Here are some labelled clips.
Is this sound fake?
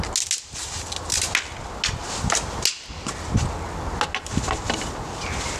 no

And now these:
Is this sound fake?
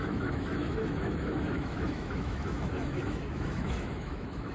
yes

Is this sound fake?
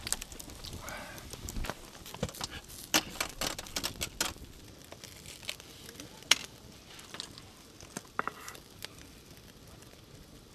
no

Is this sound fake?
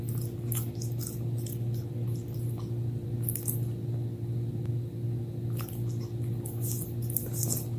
no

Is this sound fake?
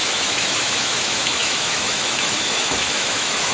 yes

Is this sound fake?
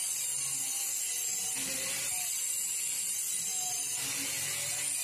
no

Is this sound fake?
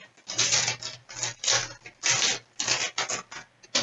no